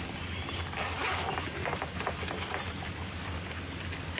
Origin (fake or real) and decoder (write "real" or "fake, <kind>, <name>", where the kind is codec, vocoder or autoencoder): real